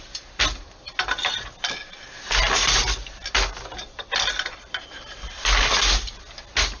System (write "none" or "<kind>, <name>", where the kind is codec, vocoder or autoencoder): none